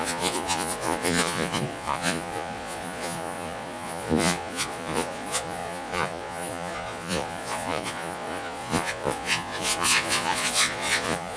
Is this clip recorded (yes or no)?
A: no